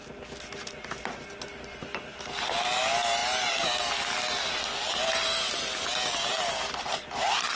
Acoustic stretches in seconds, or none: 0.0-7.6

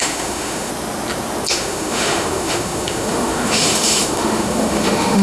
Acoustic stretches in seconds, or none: 0.7-1.5

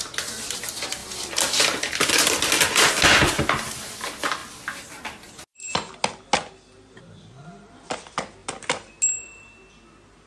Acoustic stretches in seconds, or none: 0.0-10.3

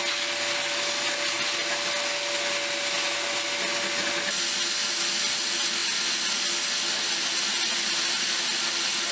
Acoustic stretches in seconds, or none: 0.0-9.1

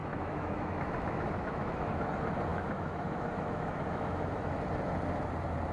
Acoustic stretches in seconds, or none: 2.1-2.5; 4.6-5.7

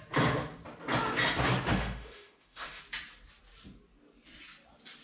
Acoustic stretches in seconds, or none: 0.0-1.7; 2.8-5.0

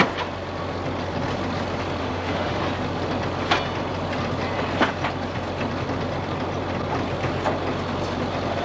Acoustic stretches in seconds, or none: 0.0-2.0; 2.6-8.6

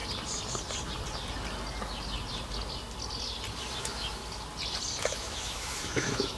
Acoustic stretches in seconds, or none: 0.0-3.8; 4.2-5.0